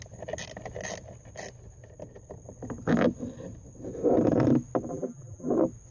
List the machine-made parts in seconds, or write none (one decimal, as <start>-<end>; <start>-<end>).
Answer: 4.9-5.5